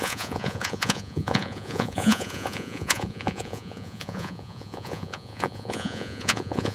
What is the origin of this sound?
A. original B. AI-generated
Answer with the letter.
B